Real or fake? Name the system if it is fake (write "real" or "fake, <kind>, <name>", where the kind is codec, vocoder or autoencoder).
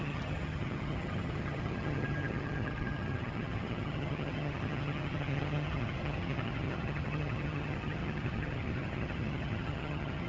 fake, vocoder, HiFi-GAN